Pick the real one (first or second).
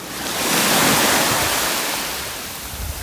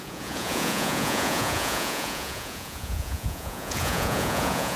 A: first